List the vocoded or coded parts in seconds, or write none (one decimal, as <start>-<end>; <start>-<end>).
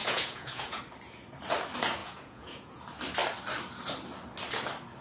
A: 0.0-0.8; 2.0-2.8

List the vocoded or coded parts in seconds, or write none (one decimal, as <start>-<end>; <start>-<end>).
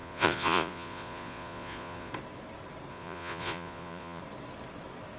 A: 0.0-2.1; 2.9-4.2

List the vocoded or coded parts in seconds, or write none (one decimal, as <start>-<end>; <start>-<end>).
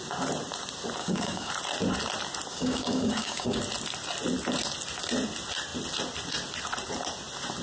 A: 1.0-1.5; 2.5-3.6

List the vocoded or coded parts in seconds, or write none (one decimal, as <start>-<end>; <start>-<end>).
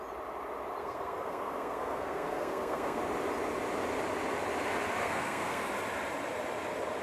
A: 0.8-3.0; 5.0-5.6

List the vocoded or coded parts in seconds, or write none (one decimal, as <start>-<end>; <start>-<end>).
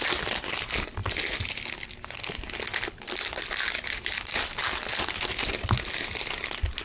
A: none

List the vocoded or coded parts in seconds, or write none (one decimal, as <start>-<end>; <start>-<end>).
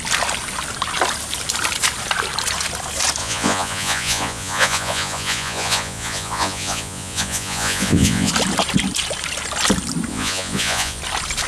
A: 3.2-8.3; 10.1-11.0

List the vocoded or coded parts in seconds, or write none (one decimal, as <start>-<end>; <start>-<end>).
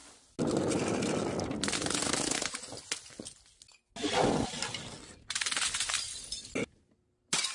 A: none